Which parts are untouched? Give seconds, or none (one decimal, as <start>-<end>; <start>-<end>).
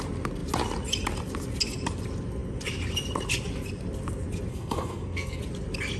0.0-4.5; 5.4-6.0